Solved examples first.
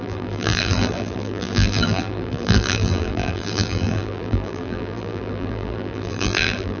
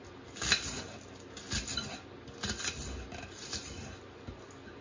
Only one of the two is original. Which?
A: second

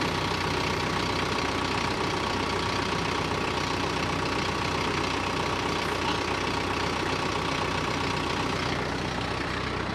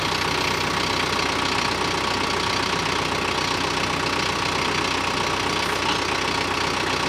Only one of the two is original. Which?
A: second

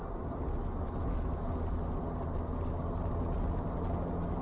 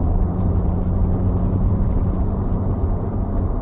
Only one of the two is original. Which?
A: first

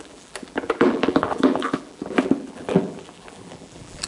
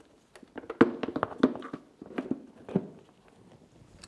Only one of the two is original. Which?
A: second